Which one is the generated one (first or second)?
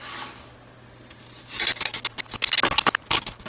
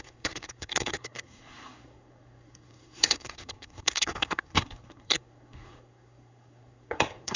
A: second